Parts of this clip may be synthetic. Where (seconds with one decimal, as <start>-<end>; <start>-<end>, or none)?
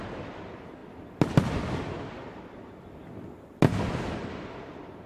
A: none